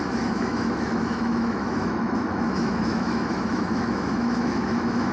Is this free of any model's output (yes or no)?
no